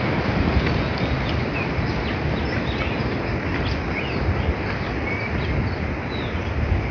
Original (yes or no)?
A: yes